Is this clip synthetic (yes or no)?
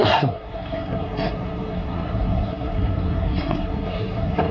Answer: yes